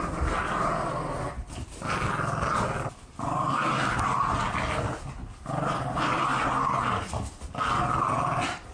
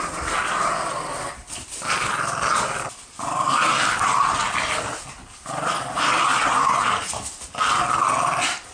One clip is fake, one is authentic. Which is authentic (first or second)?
first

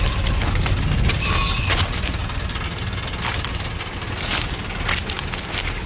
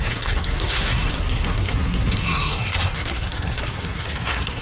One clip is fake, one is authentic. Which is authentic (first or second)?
first